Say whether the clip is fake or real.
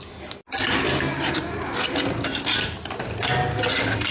real